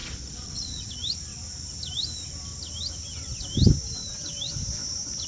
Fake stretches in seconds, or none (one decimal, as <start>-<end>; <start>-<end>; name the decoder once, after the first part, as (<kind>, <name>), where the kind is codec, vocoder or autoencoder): 0.0-0.9 (vocoder, WaveNeXt)